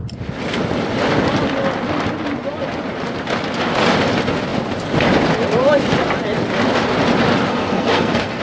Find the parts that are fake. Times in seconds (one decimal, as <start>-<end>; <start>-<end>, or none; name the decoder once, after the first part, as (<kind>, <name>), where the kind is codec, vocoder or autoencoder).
7.5-8.4 (codec, SNAC)